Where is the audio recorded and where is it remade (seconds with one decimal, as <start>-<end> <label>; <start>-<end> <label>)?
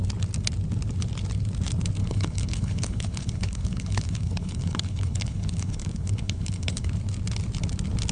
0.0-2.0 recorded; 2.0-6.9 remade; 6.9-8.1 recorded